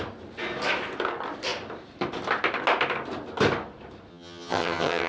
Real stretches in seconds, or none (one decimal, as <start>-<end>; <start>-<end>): 0.0-4.1